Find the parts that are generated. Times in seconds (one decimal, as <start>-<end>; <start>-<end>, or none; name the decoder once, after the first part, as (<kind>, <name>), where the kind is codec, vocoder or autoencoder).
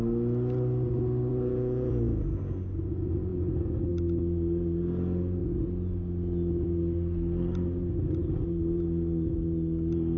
1.3-2.4 (vocoder, Vocos)